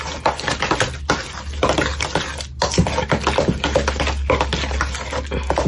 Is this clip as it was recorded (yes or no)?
yes